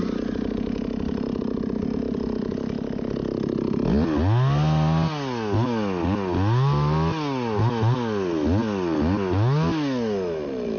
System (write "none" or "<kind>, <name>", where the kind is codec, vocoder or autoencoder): none